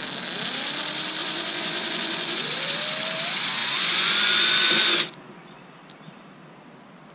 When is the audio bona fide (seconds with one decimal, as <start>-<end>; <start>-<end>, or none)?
0.0-1.2; 2.8-3.6; 5.6-7.1